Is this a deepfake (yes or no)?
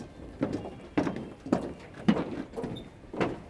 yes